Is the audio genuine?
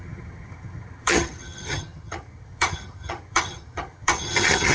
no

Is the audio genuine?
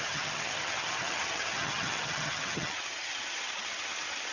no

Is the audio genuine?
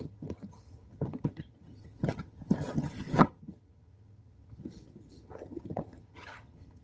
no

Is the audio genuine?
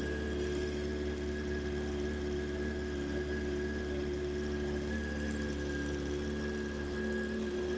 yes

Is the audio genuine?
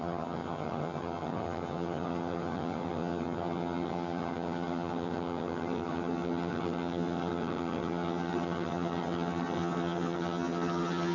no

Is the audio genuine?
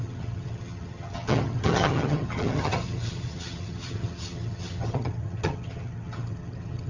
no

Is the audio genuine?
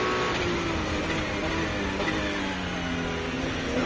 yes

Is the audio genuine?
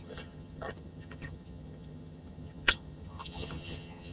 no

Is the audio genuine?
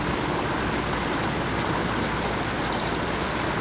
yes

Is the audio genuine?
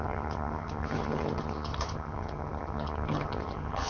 no